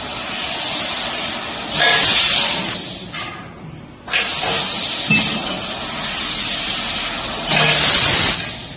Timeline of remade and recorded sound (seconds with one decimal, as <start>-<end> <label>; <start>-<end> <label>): 0.0-8.8 recorded